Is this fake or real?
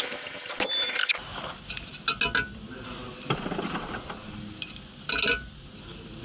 real